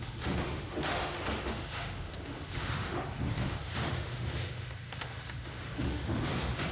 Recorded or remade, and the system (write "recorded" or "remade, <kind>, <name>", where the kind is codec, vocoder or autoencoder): remade, autoencoder, DAC-VAE